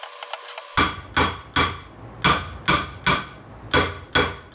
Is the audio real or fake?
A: real